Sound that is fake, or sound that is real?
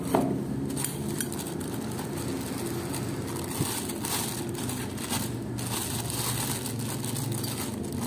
real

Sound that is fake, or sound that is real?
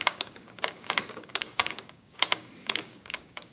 fake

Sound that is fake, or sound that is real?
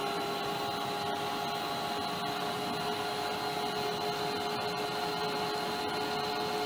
real